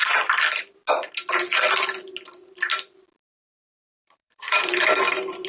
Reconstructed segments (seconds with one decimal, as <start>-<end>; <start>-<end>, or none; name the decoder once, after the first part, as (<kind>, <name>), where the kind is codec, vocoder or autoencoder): 3.6-5.0 (vocoder, BigVGAN v2)